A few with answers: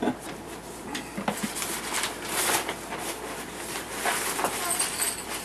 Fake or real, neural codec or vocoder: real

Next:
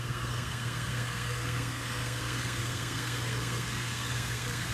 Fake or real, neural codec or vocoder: fake, codec, SNAC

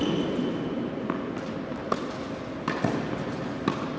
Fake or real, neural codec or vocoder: real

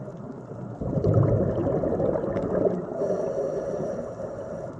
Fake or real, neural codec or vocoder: real